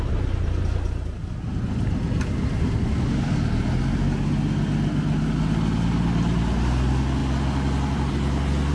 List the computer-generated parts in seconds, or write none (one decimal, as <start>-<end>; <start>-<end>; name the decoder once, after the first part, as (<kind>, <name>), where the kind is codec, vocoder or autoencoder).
none